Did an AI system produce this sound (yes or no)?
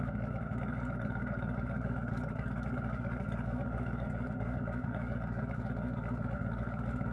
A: yes